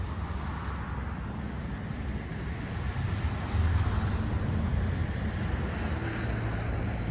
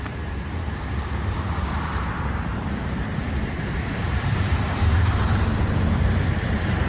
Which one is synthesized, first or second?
second